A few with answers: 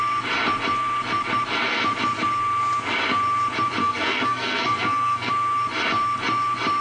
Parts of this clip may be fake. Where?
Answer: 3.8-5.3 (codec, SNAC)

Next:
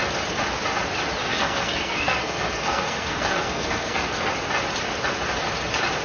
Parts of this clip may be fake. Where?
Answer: 1.2-4.3 (codec, SNAC)